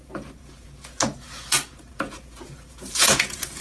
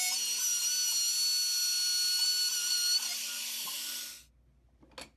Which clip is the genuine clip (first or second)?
second